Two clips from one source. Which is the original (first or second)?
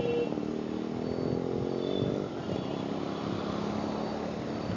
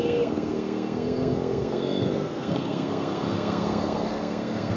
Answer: first